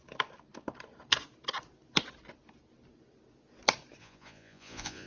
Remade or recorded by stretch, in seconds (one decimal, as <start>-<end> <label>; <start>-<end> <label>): 0.0-4.0 recorded; 4.0-5.1 remade